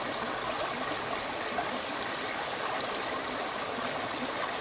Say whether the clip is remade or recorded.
recorded